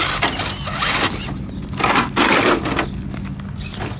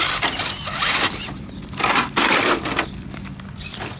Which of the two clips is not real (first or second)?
second